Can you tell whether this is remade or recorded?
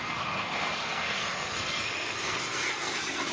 remade